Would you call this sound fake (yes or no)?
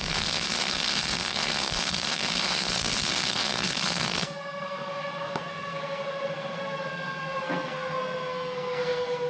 yes